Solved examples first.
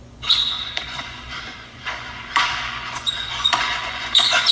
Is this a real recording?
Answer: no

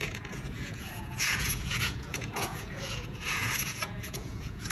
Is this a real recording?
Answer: no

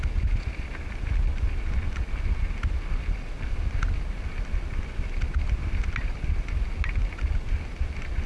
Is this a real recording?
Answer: yes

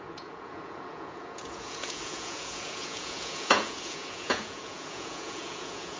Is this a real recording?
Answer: no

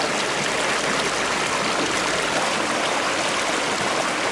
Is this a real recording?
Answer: yes